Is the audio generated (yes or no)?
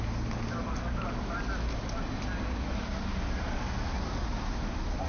no